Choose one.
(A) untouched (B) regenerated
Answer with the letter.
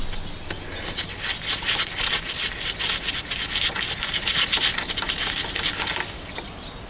A